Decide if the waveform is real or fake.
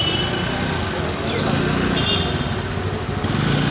real